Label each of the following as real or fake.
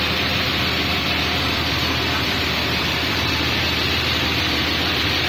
fake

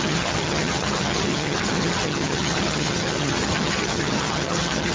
fake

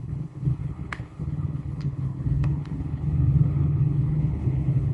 fake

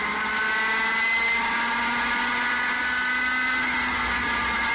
real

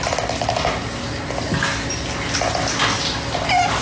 real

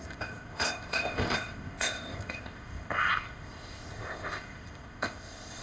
fake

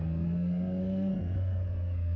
fake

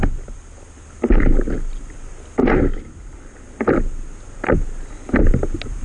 real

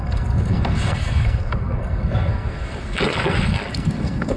fake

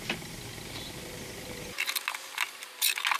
real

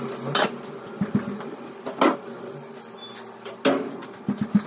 real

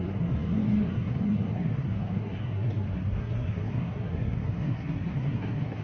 fake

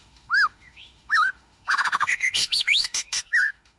fake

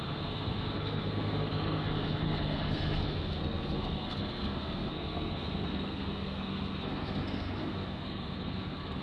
fake